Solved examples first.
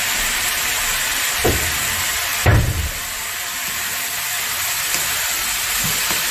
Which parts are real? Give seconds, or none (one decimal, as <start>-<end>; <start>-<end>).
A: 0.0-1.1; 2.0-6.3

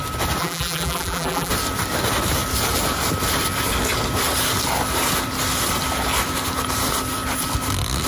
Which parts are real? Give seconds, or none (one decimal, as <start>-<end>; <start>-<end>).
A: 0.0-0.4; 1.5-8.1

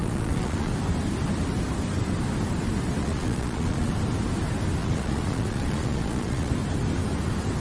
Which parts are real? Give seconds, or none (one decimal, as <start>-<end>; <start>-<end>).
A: 0.7-3.0; 3.9-4.8; 6.5-7.6

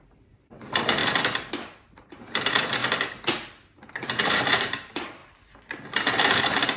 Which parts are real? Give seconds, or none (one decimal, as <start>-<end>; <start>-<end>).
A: 2.8-3.9; 5.2-5.9

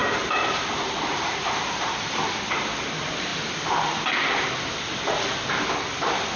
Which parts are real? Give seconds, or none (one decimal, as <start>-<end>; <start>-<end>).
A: 2.2-6.4

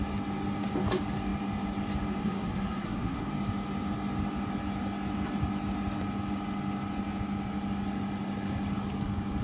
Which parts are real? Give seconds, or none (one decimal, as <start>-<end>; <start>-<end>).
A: 0.0-2.2; 3.3-9.4

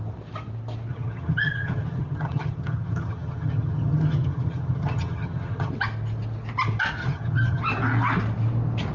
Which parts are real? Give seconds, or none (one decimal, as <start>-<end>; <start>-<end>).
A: 0.0-0.9; 5.7-7.0; 7.6-8.9

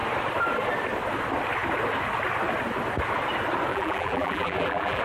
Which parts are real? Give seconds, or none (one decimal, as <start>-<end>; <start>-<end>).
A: 0.0-3.7